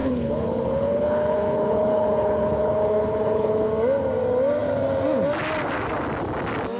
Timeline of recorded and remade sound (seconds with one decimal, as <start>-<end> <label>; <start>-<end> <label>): 0.0-3.7 remade; 3.7-6.8 recorded